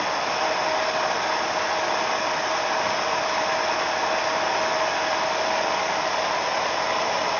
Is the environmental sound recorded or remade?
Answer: recorded